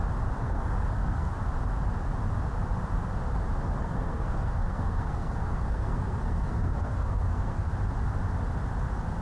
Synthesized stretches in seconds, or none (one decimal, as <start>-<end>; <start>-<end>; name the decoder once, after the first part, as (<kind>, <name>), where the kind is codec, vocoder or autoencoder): 0.4-1.3 (codec, SNAC); 3.8-7.7

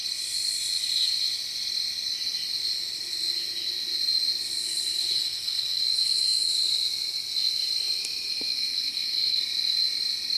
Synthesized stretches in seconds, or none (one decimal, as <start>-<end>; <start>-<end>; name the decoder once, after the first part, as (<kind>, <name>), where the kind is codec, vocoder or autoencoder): 5.0-5.8 (codec, SNAC); 8.3-9.4